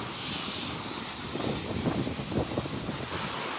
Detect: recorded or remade recorded